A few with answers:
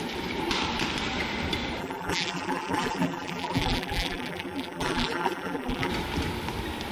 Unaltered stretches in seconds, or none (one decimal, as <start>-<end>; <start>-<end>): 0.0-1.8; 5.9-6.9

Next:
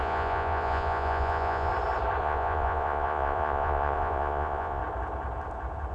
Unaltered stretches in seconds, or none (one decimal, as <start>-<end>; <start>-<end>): 1.7-2.2; 4.8-5.9

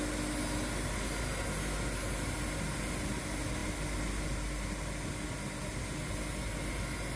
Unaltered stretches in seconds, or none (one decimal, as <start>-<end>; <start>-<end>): 0.0-7.2